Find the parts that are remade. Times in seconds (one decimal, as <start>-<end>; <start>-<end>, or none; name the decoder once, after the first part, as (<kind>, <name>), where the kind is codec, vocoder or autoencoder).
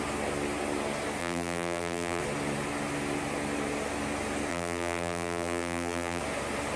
1.2-2.2 (vocoder, BigVGAN v2); 4.5-6.2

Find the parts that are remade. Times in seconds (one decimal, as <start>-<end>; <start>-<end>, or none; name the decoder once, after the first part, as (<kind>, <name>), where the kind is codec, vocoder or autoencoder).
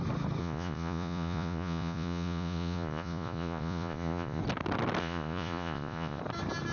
0.4-4.4 (vocoder, Vocos); 5.0-6.2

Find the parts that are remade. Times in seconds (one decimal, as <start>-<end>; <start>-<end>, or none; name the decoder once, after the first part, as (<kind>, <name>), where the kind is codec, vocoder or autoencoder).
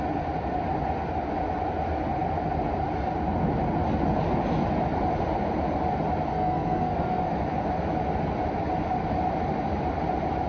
6.3-7.3 (codec, SNAC)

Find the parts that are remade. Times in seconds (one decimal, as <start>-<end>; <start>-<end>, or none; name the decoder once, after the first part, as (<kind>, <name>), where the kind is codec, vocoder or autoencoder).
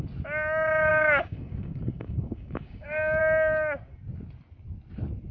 0.9-3.2 (codec, DAC)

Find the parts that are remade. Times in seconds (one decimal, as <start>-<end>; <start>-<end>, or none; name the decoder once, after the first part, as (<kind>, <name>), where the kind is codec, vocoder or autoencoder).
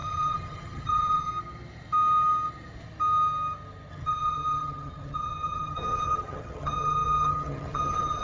0.0-1.3 (vocoder, HiFi-GAN); 3.9-8.2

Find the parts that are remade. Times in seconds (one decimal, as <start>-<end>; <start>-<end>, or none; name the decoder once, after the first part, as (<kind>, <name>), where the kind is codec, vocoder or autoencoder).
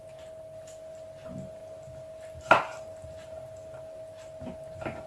none